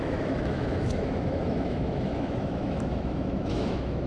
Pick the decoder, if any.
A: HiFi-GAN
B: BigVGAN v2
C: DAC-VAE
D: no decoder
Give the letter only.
C